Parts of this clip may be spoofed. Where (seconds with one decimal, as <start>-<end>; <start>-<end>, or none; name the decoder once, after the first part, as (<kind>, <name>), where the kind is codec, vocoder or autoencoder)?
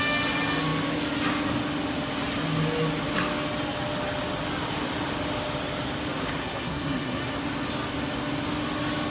6.4-7.3 (codec, SNAC)